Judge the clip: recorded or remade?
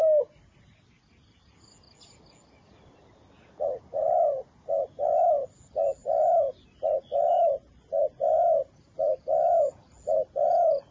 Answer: recorded